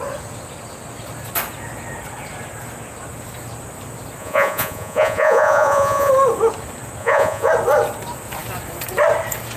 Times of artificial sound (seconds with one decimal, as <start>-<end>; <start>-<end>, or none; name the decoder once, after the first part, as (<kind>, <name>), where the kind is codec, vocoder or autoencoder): 4.2-6.1 (vocoder, Vocos); 7.0-7.5